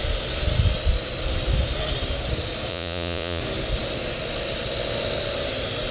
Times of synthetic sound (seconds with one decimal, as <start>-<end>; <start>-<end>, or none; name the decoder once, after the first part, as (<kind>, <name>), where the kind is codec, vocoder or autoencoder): 2.7-3.4 (vocoder, Vocos)